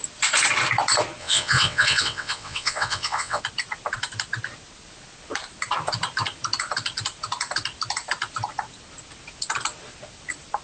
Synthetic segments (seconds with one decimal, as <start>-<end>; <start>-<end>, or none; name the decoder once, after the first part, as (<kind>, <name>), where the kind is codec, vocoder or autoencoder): 1.2-3.4 (vocoder, WaveNeXt)